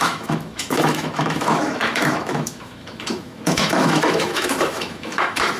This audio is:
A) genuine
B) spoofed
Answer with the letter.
B